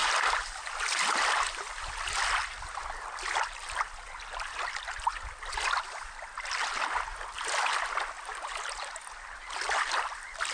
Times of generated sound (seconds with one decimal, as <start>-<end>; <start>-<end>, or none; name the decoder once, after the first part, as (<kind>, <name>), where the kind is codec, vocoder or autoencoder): none